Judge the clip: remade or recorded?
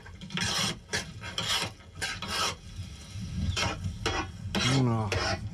recorded